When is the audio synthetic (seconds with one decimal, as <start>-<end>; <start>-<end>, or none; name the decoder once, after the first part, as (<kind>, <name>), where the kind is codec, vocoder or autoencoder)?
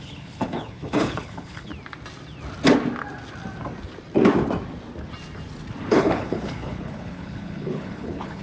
0.0-1.7 (codec, HILCodec); 5.9-8.4